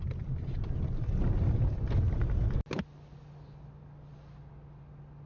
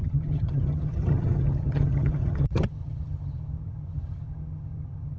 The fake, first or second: second